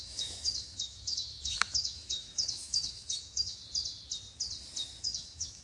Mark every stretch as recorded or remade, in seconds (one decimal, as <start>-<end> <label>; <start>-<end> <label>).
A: 0.0-3.6 remade; 3.6-5.0 recorded; 5.0-5.6 remade